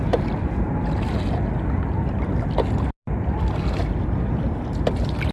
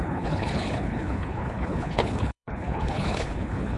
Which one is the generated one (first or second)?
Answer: second